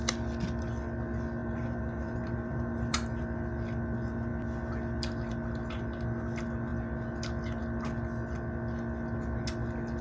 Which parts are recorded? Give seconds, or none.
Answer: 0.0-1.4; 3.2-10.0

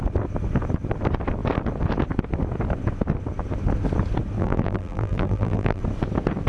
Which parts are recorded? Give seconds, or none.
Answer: 0.0-4.4; 5.8-6.5

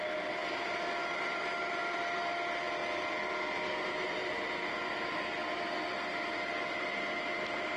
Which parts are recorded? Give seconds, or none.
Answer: 0.0-7.8

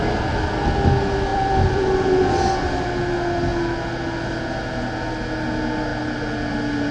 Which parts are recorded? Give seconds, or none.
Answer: 0.0-1.3; 1.8-6.9

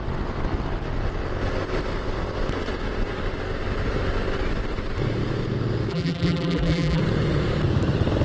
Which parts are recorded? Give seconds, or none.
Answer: 0.0-5.9; 7.0-8.2

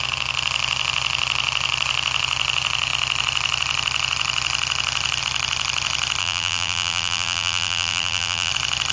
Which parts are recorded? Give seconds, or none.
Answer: 0.0-6.2; 8.5-8.9